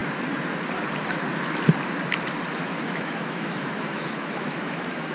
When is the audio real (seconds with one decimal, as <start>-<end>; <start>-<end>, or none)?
0.0-2.6